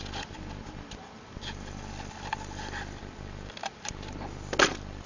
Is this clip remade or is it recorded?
recorded